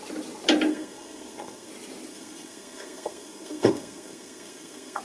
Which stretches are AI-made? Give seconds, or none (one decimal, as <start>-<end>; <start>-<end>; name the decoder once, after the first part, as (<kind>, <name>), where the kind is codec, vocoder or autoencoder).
0.7-1.7 (codec, SNAC); 2.1-5.0